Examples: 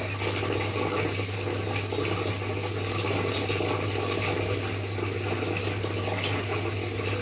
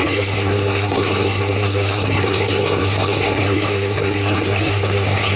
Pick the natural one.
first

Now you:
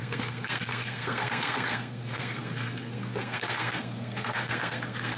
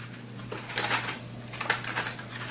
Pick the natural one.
second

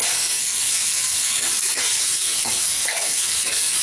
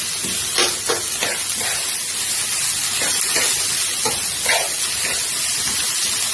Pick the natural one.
second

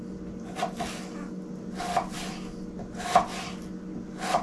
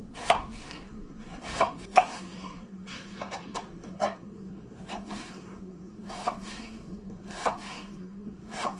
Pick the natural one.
first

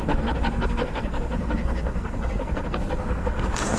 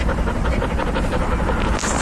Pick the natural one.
second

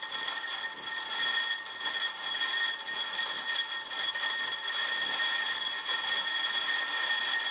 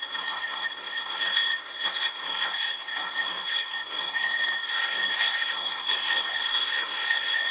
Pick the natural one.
first